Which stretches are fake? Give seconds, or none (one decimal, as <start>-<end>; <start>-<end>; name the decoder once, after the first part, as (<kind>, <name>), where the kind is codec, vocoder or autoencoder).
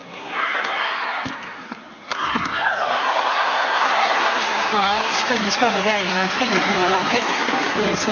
0.0-8.1 (codec, SNAC)